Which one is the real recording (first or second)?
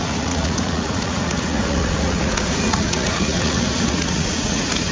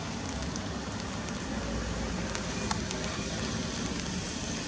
second